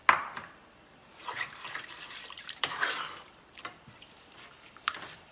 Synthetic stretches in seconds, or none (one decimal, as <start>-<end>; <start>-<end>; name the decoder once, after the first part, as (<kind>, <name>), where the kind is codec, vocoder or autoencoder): 0.9-5.3 (vocoder, BigVGAN v2)